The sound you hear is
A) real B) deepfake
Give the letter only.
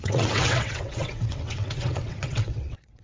B